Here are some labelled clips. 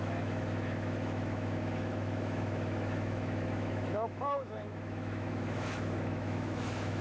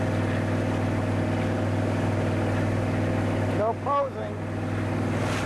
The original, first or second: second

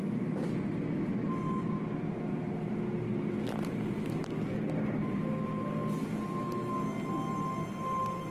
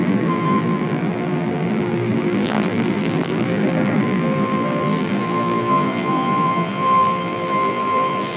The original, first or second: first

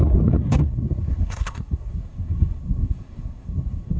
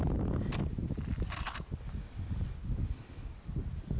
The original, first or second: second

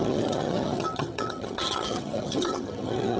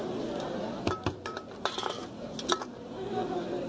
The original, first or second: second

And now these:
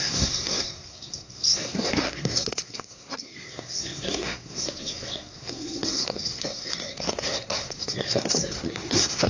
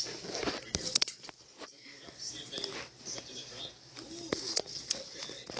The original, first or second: second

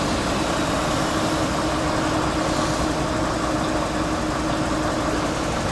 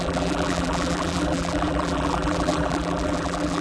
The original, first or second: first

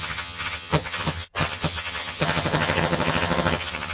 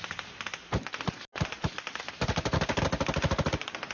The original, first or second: second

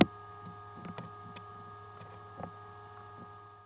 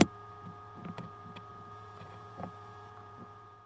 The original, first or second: first